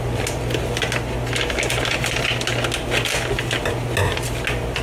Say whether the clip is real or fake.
real